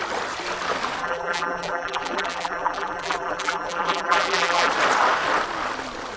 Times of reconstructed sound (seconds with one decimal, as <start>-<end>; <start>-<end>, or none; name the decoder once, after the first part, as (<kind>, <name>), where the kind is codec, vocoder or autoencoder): 1.0-4.7 (vocoder, BigVGAN v2)

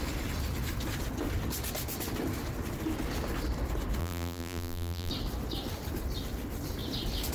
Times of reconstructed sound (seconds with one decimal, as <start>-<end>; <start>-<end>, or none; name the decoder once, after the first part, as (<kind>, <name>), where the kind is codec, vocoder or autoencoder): 4.0-5.1 (vocoder, BigVGAN v2)

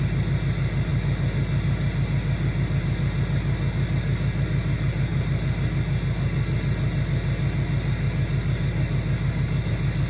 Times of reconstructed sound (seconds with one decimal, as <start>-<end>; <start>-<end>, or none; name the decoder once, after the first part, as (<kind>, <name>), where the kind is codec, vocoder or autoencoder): none

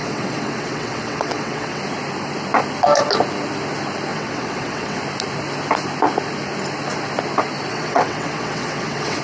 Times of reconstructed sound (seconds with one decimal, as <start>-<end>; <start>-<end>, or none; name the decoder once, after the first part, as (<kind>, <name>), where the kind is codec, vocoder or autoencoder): 0.0-1.8 (vocoder, WaveNeXt); 4.1-5.0; 7.7-9.2

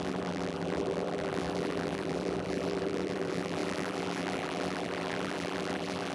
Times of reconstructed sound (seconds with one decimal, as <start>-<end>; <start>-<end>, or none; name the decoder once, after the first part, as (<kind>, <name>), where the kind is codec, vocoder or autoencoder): 0.0-6.1 (vocoder, BigVGAN v2)

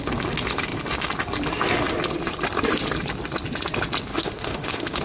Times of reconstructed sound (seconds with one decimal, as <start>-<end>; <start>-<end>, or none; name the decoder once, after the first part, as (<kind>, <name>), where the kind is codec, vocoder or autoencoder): 4.1-5.0 (autoencoder, DAC-VAE)

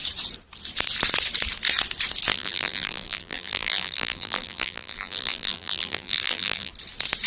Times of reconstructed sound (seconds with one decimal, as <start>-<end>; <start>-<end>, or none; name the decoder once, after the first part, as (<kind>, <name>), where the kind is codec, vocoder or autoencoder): 2.3-6.7 (vocoder, BigVGAN v2)